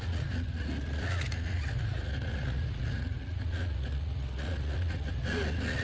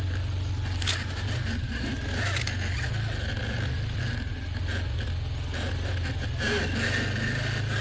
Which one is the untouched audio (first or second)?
second